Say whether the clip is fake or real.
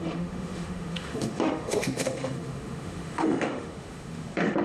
fake